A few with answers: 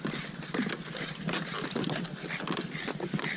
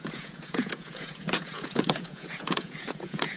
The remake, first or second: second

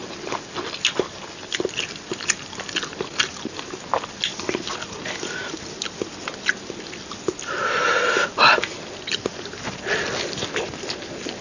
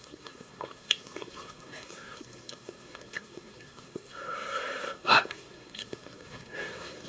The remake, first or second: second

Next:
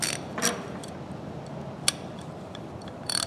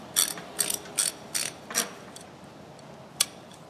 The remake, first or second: first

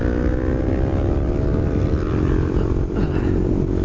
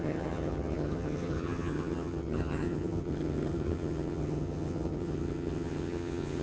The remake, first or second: second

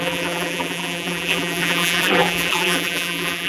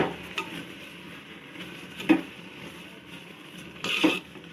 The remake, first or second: first